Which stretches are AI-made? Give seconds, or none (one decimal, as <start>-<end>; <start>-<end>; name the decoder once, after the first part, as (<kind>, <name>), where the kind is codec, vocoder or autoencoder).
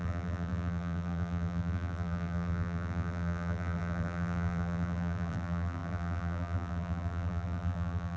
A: 0.0-8.2 (vocoder, BigVGAN v2)